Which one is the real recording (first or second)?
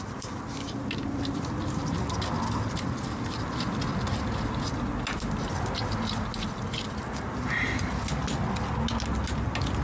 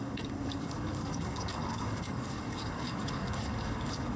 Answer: first